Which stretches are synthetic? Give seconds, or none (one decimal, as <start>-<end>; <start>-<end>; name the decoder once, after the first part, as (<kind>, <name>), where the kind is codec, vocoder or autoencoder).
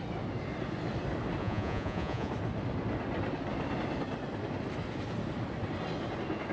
1.4-2.3 (vocoder, Vocos)